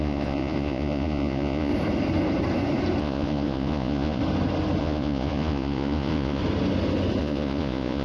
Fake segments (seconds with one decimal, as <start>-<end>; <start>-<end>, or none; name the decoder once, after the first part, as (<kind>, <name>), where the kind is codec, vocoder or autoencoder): 0.0-1.7 (vocoder, Vocos); 3.0-4.2; 4.8-6.4; 7.2-8.0